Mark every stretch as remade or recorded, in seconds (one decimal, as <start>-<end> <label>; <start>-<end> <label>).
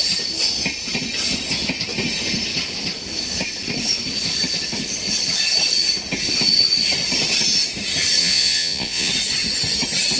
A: 0.0-8.2 recorded; 8.2-9.1 remade; 9.1-10.2 recorded